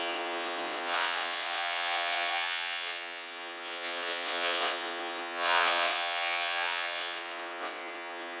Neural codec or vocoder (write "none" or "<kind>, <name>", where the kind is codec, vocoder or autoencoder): vocoder, WaveNeXt